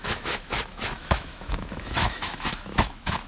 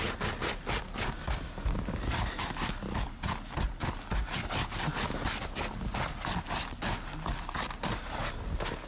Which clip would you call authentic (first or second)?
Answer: second